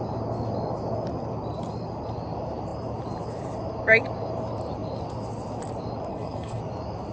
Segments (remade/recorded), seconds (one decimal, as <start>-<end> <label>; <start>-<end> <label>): 0.0-6.1 recorded; 6.1-6.6 remade; 6.6-7.1 recorded